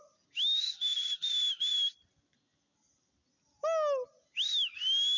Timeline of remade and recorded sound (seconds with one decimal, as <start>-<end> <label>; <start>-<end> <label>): 0.0-5.2 recorded